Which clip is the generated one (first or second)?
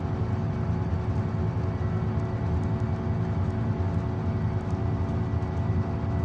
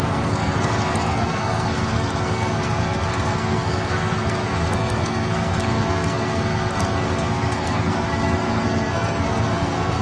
second